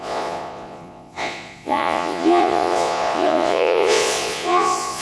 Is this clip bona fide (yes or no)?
no